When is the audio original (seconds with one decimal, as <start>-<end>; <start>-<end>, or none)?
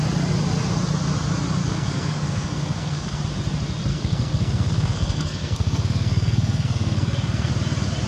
0.0-1.6; 3.2-3.9; 7.5-8.1